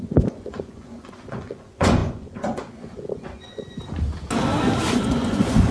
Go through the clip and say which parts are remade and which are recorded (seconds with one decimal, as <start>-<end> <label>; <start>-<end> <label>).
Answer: 0.0-3.8 remade; 3.8-4.9 recorded; 4.9-5.7 remade